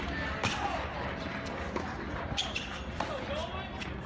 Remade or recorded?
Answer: recorded